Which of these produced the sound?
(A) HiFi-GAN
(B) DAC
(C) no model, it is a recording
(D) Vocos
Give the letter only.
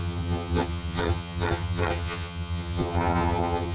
A